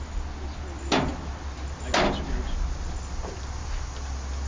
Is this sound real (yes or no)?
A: yes